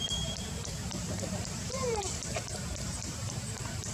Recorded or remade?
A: remade